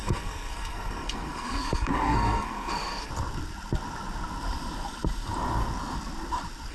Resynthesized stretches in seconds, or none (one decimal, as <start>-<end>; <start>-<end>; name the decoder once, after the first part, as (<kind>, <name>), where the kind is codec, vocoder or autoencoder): 0.0-3.1 (codec, SNAC)